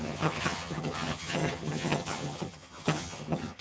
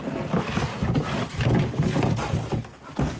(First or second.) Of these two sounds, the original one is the second